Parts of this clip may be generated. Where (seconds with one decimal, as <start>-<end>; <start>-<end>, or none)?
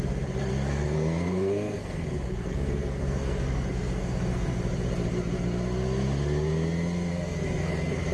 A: 0.5-4.6; 7.1-8.1